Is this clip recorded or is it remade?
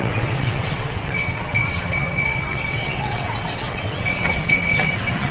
remade